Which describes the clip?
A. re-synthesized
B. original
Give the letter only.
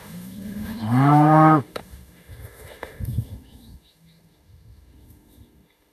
A